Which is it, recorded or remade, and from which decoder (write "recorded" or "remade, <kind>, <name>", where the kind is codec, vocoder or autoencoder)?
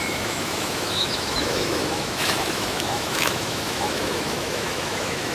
remade, autoencoder, DAC-VAE